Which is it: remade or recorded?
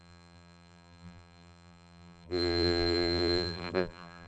remade